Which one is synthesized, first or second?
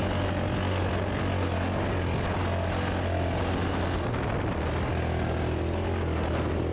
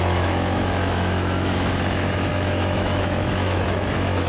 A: second